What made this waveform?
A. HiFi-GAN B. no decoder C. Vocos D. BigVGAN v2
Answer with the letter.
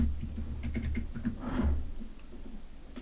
B